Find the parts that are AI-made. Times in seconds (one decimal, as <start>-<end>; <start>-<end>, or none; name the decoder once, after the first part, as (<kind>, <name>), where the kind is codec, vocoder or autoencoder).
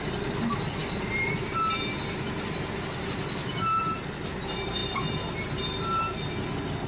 none